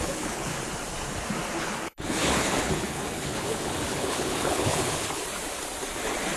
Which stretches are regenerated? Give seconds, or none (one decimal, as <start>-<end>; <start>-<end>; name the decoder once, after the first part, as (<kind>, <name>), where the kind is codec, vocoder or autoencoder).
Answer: 0.0-0.5 (codec, HILCodec); 1.6-5.2